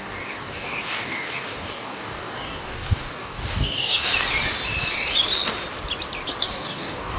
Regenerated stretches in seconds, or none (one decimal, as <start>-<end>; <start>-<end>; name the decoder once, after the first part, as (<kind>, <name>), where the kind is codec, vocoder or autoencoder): 0.0-4.1 (codec, DAC); 6.4-7.2